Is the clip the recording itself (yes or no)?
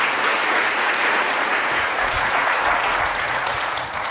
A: no